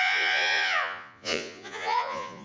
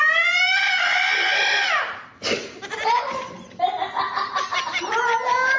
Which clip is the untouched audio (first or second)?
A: second